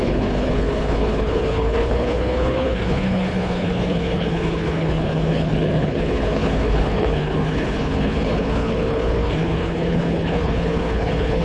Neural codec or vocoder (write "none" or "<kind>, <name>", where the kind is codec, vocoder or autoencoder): codec, HILCodec